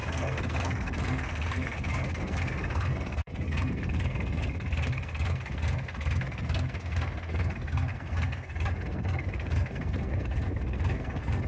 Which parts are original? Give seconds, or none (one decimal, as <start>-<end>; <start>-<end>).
none